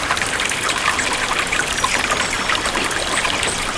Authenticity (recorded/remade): recorded